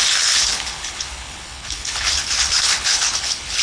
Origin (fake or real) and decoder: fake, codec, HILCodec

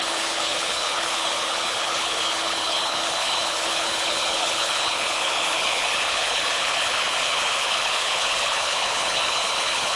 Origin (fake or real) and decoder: fake, codec, HILCodec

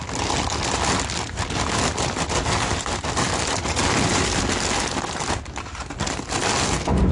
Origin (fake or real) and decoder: real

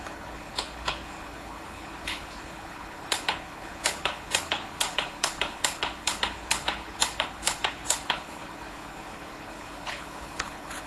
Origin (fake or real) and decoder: fake, codec, HILCodec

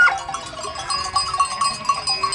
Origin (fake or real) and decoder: real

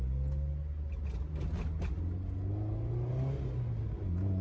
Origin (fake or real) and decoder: real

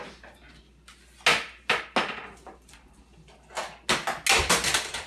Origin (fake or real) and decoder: real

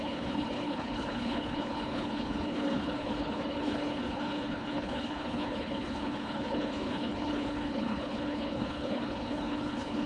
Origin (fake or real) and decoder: fake, codec, HILCodec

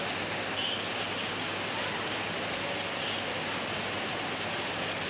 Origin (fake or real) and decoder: real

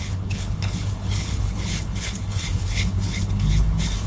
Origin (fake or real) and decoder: fake, codec, HILCodec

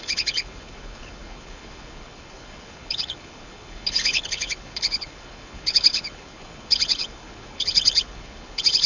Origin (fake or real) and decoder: fake, codec, HILCodec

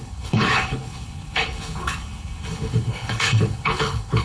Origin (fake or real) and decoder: fake, codec, HILCodec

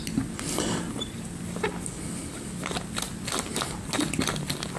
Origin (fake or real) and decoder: real